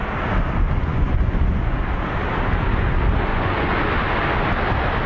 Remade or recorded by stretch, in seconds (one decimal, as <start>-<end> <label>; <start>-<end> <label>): 0.0-0.8 recorded; 0.8-1.8 remade; 1.8-3.3 recorded; 3.3-3.9 remade; 3.9-5.1 recorded